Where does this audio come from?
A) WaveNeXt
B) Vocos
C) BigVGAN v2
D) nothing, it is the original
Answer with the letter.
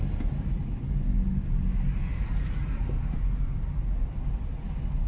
D